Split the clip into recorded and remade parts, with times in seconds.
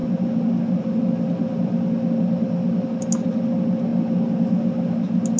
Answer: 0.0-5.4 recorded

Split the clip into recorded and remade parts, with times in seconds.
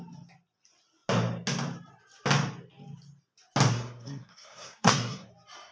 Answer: 0.0-3.7 recorded; 3.7-5.3 remade; 5.3-5.7 recorded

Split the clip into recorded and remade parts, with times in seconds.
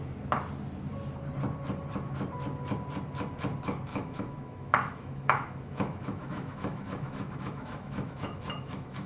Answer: 0.0-3.9 recorded; 3.9-9.1 remade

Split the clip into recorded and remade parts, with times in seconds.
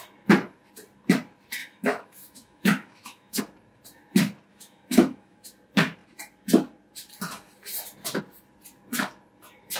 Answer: 0.0-1.6 recorded; 1.6-3.4 remade; 3.4-4.5 recorded; 4.5-5.5 remade; 5.5-9.8 recorded